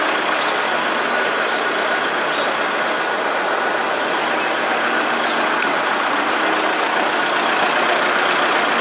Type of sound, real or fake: real